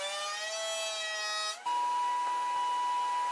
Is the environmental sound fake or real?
real